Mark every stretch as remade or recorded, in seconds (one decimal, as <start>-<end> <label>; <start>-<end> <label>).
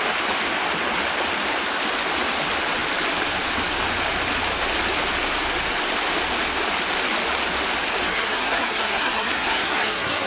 0.0-8.1 recorded; 8.1-10.3 remade